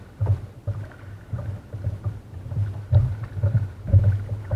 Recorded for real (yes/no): yes